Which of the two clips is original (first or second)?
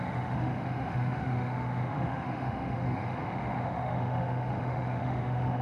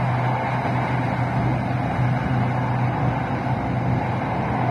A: second